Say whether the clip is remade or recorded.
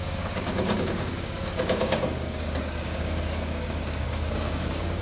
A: remade